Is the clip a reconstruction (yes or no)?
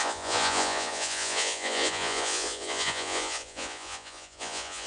yes